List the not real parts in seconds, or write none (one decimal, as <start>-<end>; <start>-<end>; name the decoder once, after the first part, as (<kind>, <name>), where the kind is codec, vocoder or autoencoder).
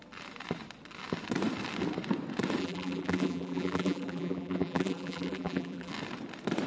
2.6-5.9 (vocoder, BigVGAN v2)